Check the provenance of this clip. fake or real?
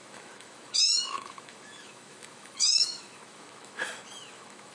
fake